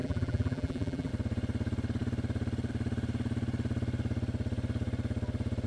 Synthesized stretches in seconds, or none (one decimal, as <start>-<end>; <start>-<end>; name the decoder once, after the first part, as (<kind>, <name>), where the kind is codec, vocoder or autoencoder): 0.0-1.1 (vocoder, BigVGAN v2)